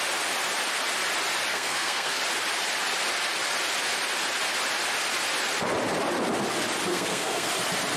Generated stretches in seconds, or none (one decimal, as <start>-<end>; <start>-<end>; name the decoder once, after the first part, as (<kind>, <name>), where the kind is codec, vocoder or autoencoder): 1.5-2.2 (codec, SNAC); 6.9-7.5